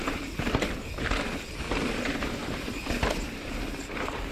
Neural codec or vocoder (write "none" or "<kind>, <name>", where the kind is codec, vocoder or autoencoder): none